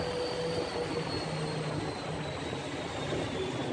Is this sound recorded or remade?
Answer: recorded